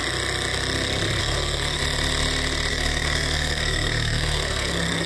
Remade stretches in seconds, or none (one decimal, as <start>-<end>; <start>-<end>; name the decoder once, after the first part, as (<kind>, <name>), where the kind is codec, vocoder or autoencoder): 1.2-1.8 (codec, SNAC); 2.7-5.1